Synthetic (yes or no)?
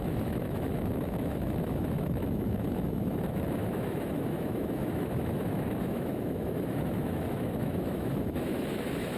yes